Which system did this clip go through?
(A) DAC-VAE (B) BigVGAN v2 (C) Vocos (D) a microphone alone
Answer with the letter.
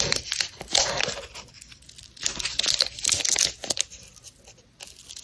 D